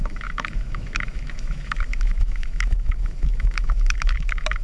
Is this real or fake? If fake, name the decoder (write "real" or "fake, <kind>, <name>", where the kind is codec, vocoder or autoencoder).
fake, autoencoder, DAC-VAE